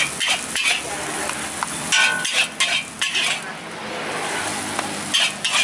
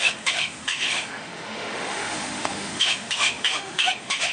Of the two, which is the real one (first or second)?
first